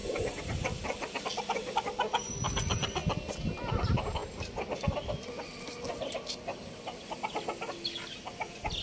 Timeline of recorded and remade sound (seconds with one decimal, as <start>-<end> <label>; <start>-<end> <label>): 0.0-8.8 recorded